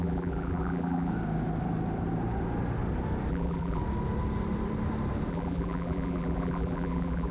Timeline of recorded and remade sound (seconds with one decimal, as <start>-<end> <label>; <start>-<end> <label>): 0.0-1.1 remade; 1.1-3.3 recorded; 3.3-3.8 remade; 3.8-5.3 recorded; 5.3-7.3 remade